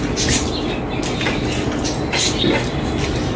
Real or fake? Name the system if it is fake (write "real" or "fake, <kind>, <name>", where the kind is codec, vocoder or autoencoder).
real